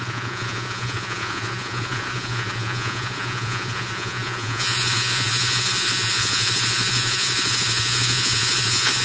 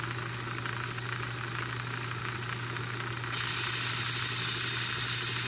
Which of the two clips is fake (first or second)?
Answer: first